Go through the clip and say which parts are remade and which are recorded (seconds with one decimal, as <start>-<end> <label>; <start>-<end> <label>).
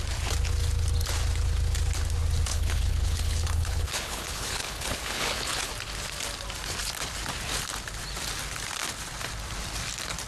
0.0-2.5 recorded; 2.5-5.7 remade; 5.7-10.3 recorded